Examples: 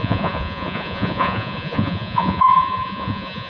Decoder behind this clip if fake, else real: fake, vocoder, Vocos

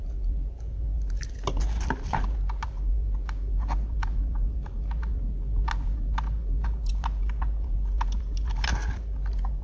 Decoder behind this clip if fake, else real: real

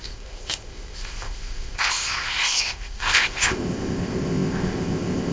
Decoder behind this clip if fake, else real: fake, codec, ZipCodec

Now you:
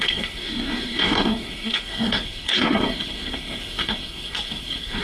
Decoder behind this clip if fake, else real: fake, codec, SNAC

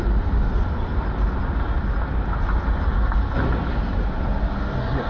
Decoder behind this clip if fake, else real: real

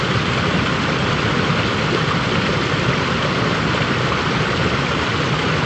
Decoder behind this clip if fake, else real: real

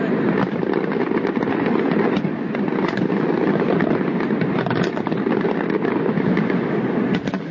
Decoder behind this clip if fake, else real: real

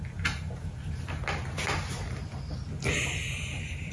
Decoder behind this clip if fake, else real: real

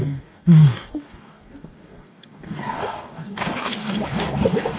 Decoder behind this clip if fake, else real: fake, codec, DAC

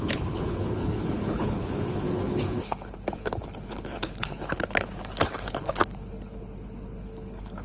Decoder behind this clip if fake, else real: fake, codec, HILCodec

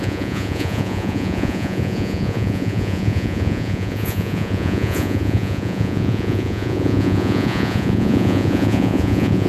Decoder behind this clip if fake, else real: fake, vocoder, Vocos